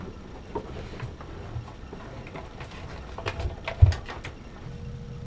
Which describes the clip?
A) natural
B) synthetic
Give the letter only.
A